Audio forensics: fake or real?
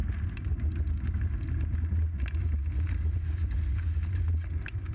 real